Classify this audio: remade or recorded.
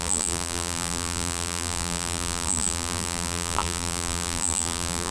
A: remade